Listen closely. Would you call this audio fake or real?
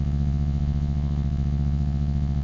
fake